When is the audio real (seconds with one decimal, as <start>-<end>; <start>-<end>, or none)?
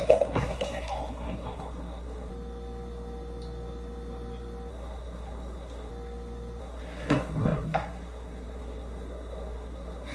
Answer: 2.3-4.7; 5.9-6.6